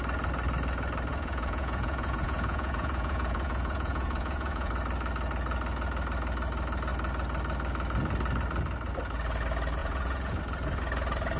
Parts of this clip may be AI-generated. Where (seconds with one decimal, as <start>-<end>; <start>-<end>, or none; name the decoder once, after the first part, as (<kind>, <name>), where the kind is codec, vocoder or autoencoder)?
1.1-4.7 (vocoder, Vocos); 9.8-10.4